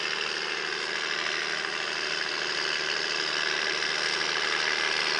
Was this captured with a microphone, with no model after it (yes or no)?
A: yes